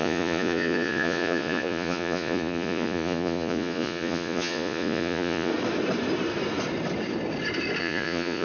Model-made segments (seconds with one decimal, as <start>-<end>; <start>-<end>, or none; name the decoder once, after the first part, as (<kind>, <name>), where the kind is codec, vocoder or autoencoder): 0.0-5.5 (vocoder, Vocos); 7.8-8.4

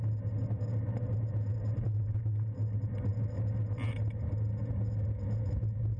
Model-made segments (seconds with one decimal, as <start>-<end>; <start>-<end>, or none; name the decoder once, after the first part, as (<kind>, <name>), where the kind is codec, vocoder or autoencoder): none

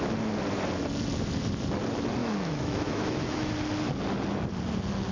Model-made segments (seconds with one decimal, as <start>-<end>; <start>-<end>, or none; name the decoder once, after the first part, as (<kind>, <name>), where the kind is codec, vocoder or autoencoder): 2.2-3.5 (autoencoder, DAC-VAE)

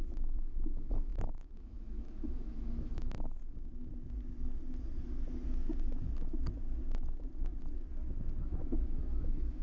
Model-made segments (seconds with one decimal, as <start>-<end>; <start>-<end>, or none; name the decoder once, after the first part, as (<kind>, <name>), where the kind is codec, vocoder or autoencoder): 0.0-3.4 (autoencoder, DAC-VAE); 8.4-9.6

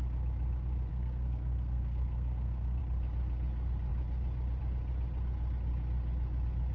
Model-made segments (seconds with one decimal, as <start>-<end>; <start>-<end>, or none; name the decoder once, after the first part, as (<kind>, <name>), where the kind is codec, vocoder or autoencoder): 0.9-2.8 (codec, SNAC)